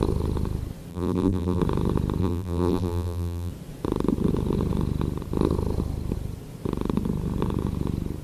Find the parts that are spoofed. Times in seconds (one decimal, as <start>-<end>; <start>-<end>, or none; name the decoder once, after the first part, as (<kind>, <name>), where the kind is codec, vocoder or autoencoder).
0.9-1.6 (vocoder, BigVGAN v2); 2.2-3.5